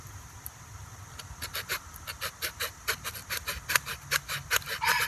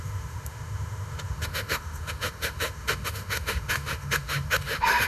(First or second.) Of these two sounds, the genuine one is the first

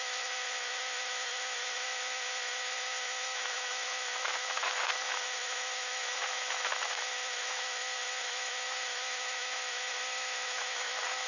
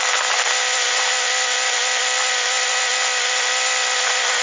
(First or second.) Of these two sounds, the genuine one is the second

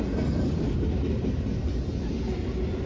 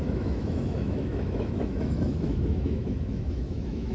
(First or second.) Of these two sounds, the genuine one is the first